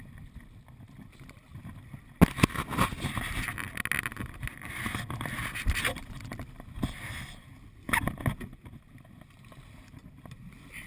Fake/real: real